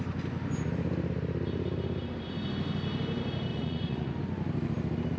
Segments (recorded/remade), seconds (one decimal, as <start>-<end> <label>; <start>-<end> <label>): 0.0-3.5 recorded; 3.5-4.2 remade; 4.2-5.2 recorded